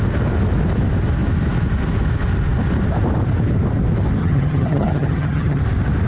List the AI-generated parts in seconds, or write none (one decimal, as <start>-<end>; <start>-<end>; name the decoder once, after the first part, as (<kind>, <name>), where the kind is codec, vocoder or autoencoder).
4.2-5.6 (vocoder, HiFi-GAN)